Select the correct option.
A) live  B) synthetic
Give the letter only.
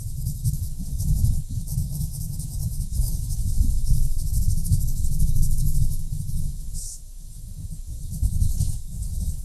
B